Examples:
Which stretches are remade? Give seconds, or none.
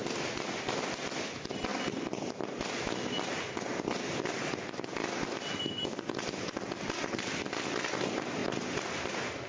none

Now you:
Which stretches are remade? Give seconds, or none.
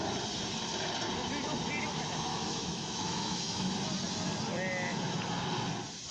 2.3-3.7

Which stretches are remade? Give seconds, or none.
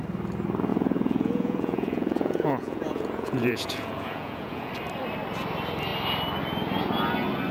0.7-4.7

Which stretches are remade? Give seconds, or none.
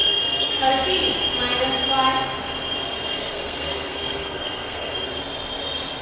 0.0-0.7; 3.1-4.9